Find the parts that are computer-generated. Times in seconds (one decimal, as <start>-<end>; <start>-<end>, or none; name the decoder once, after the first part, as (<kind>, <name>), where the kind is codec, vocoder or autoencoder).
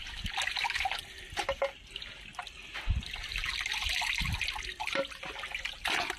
none